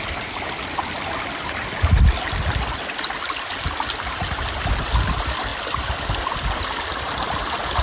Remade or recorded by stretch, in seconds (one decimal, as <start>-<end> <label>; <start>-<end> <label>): 0.0-7.8 recorded